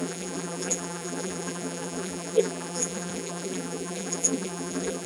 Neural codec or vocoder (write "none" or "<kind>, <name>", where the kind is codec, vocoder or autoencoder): vocoder, BigVGAN v2